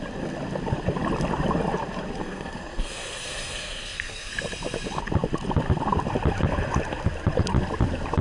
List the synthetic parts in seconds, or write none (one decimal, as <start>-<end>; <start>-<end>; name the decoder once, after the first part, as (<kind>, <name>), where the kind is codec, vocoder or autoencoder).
2.2-4.3 (codec, SNAC)